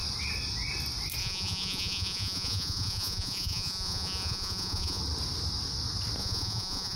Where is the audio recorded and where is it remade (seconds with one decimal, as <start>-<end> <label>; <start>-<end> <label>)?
0.0-1.2 recorded; 1.2-5.0 remade; 5.0-6.2 recorded; 6.2-7.0 remade

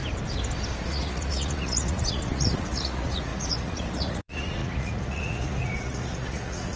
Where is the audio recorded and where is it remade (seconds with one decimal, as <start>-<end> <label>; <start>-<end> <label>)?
0.0-0.8 recorded; 0.8-6.8 remade